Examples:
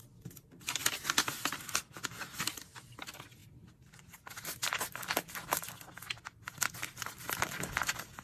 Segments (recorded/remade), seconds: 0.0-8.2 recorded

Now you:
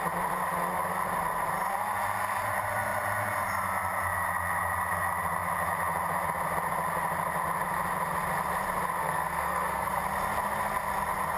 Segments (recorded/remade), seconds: 0.0-9.0 recorded; 9.0-10.0 remade; 10.0-11.4 recorded

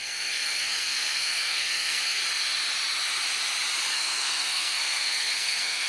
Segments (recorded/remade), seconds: 0.0-2.2 remade; 2.2-3.9 recorded; 3.9-5.9 remade

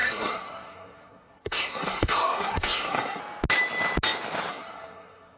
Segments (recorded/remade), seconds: 0.0-3.2 remade; 3.2-4.5 recorded; 4.5-5.4 remade

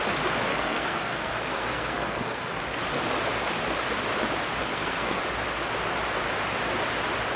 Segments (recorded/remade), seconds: 0.0-0.5 recorded; 0.5-2.6 remade; 2.6-4.6 recorded; 4.6-5.2 remade; 5.2-7.4 recorded